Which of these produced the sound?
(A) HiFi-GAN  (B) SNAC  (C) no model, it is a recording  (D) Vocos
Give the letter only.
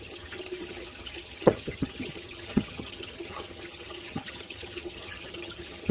A